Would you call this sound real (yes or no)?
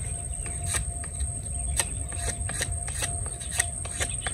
yes